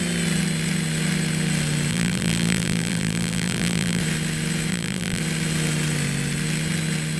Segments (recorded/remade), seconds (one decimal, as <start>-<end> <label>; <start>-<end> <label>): 0.0-1.9 recorded; 1.9-4.0 remade; 4.0-4.7 recorded; 4.7-5.2 remade; 5.2-7.2 recorded